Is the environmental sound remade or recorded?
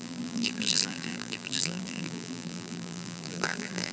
remade